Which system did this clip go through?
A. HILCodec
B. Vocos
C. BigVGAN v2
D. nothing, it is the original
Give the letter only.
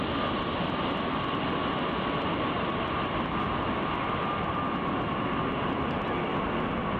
D